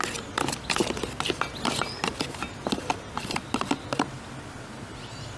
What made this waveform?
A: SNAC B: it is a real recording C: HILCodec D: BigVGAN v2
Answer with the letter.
B